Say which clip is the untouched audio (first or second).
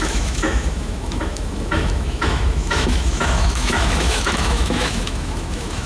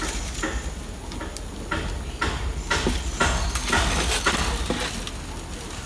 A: second